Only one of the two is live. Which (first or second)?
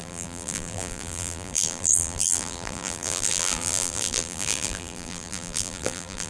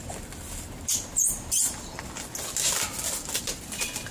second